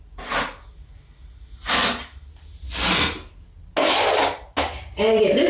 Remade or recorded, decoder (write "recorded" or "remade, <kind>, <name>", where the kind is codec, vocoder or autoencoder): recorded